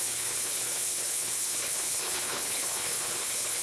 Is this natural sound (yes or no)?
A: no